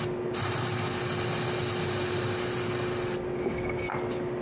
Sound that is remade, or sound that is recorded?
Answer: recorded